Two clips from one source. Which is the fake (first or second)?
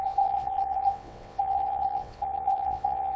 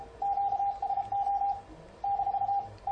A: first